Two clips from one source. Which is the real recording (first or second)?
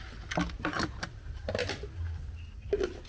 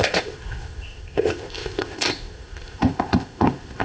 first